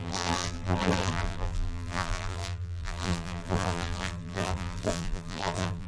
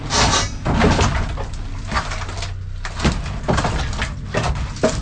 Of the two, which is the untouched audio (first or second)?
second